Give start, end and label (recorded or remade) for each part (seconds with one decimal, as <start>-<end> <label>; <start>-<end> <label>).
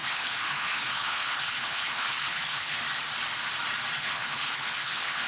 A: 0.0-2.8 remade; 2.8-4.0 recorded; 4.0-5.3 remade